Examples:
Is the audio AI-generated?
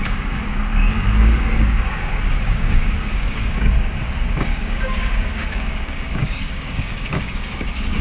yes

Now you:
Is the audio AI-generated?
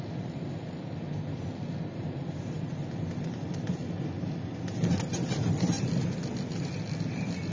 no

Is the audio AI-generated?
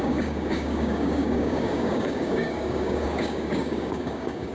yes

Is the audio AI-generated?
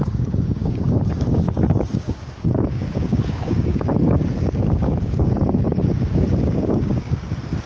yes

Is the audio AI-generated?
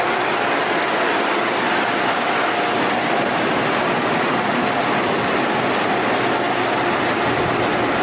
no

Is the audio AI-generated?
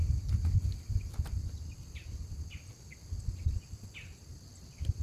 no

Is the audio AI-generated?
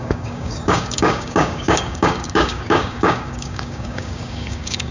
yes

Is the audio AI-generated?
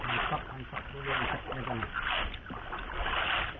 no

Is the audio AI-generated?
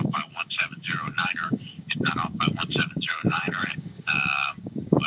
yes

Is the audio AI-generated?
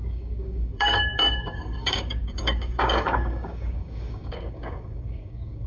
yes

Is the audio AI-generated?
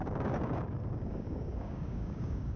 yes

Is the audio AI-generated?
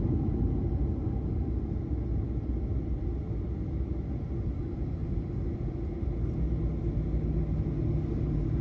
no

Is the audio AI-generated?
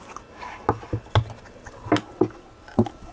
no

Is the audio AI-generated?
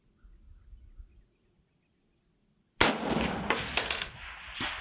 no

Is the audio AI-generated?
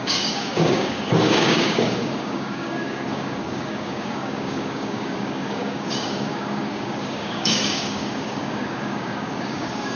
yes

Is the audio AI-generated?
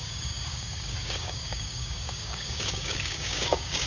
yes